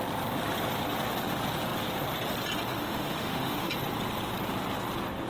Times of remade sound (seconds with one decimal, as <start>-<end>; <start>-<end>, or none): 2.7-3.7